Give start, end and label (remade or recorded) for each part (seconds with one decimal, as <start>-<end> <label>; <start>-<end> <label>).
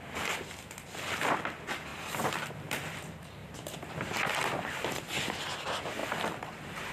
0.0-1.9 recorded; 1.9-2.5 remade; 2.5-3.4 recorded; 3.4-4.7 remade; 4.7-6.0 recorded; 6.0-6.9 remade